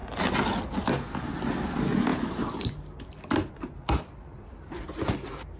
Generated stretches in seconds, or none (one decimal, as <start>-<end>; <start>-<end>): 2.1-4.8